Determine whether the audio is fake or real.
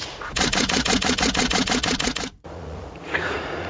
fake